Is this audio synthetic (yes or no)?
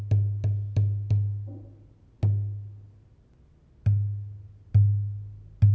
no